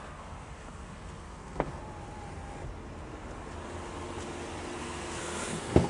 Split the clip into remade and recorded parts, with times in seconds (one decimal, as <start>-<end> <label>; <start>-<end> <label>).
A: 0.0-1.8 remade; 1.8-4.8 recorded; 4.8-5.9 remade